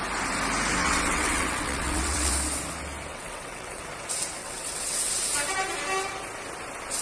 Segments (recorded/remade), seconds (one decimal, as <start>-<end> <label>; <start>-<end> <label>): 0.0-0.8 recorded; 0.8-2.3 remade; 2.3-3.1 recorded; 3.1-3.8 remade; 3.8-4.4 recorded; 4.4-5.1 remade; 5.1-7.0 recorded